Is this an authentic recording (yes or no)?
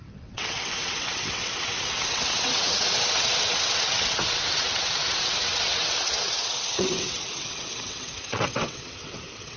no